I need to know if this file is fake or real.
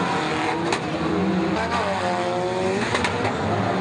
real